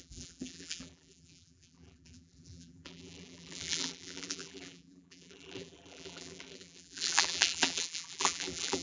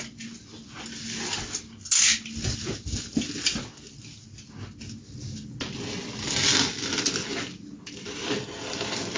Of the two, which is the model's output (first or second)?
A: first